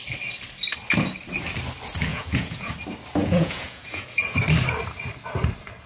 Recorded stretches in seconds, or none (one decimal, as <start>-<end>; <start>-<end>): 0.0-2.1; 2.7-3.2; 4.4-5.9